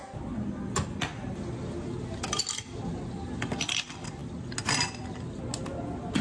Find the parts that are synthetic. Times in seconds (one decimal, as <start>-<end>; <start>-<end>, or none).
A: none